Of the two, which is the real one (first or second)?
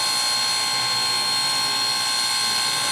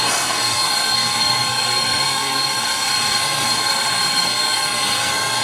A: first